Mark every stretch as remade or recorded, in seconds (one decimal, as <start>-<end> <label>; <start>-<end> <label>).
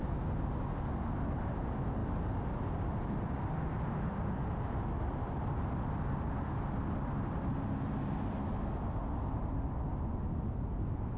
0.0-11.2 recorded